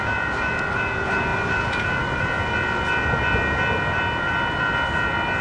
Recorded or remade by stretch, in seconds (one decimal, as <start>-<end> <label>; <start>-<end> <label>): 0.0-5.4 recorded